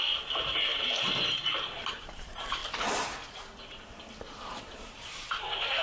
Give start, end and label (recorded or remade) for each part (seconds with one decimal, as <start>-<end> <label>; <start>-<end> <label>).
0.0-2.6 remade; 2.6-4.4 recorded; 4.4-5.8 remade